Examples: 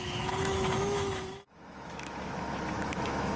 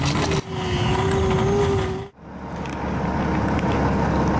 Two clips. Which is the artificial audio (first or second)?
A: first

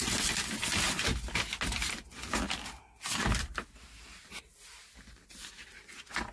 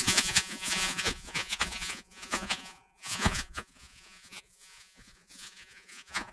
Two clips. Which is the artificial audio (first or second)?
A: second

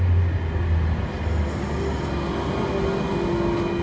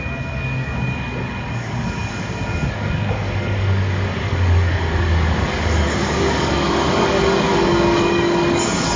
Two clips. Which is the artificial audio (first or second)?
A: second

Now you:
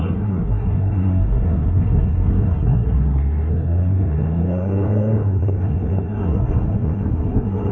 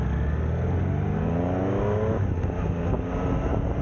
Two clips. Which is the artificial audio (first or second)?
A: first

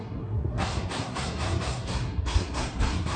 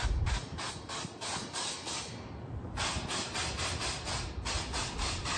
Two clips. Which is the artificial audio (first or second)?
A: first